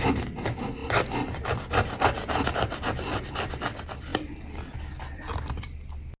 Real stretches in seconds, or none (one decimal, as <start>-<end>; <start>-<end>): 0.0-6.2